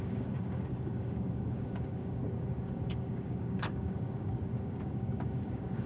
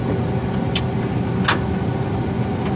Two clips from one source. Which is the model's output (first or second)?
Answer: first